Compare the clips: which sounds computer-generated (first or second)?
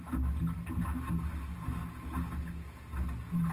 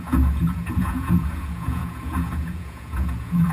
second